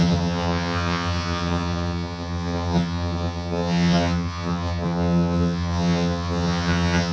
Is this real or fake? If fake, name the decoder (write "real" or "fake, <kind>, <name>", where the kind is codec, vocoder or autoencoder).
fake, vocoder, HiFi-GAN